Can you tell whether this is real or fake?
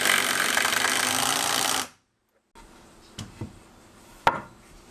real